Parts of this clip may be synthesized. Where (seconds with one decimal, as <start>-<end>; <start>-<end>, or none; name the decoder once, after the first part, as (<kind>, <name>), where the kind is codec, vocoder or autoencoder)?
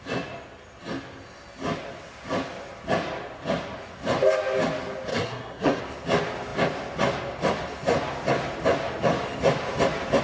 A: 5.1-5.8 (codec, SNAC)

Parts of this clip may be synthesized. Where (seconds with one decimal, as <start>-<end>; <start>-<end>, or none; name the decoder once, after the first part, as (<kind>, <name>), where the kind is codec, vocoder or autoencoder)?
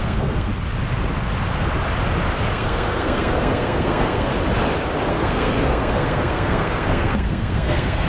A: 0.0-0.5 (codec, SNAC); 2.5-4.3; 5.1-8.1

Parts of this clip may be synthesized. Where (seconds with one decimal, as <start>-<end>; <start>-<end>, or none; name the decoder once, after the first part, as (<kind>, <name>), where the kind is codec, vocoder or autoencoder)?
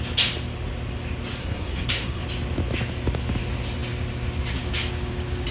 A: 1.4-2.2 (codec, SNAC)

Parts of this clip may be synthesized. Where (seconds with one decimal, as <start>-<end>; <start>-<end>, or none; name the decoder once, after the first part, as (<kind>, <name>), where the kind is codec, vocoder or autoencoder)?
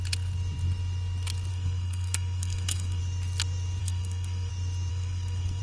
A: 1.5-3.0 (codec, SNAC); 3.8-4.5; 4.9-5.6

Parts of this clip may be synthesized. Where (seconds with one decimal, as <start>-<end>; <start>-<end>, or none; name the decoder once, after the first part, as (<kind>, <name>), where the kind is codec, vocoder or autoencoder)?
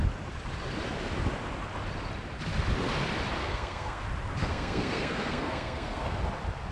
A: 3.4-4.0 (codec, SNAC); 4.4-6.2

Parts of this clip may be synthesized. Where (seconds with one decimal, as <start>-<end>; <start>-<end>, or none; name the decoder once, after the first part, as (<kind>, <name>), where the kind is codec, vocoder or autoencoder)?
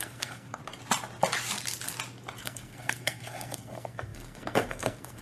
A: 0.0-0.6 (codec, SNAC); 2.4-5.2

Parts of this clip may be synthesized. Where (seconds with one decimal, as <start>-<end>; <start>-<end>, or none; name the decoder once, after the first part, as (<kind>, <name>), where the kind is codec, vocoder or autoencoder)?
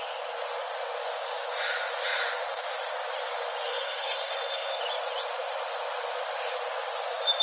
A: 3.7-4.8 (codec, SNAC)